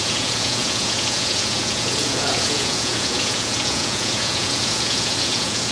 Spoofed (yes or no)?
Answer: yes